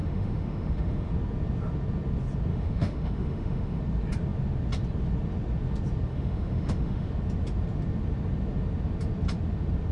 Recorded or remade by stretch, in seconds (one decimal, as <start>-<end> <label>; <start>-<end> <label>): 0.0-1.1 remade; 1.1-2.5 recorded; 2.5-3.8 remade; 3.8-6.1 recorded; 6.1-7.1 remade; 7.1-9.9 recorded